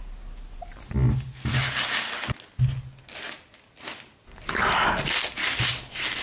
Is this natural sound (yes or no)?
yes